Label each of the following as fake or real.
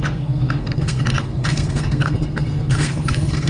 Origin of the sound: fake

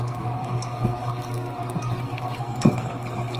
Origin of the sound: fake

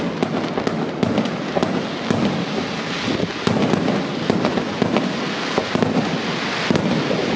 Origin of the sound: real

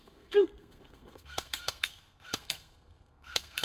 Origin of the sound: fake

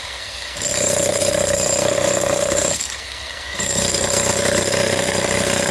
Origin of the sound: fake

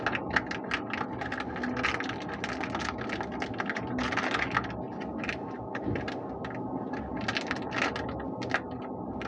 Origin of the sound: real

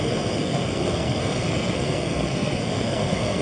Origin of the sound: fake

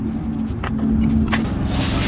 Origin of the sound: real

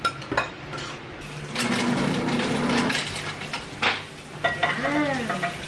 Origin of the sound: real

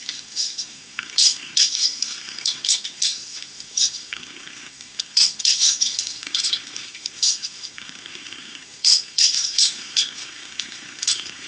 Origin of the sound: fake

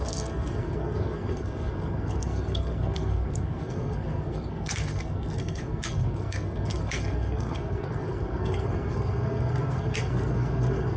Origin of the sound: fake